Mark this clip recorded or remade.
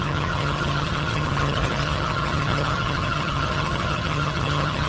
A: remade